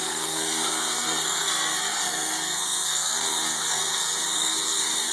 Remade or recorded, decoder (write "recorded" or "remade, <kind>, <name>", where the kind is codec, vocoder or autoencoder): remade, codec, SNAC